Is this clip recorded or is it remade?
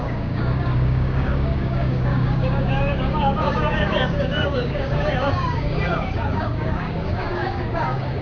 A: remade